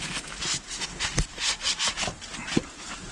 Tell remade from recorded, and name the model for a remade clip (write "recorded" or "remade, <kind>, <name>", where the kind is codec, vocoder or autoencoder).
recorded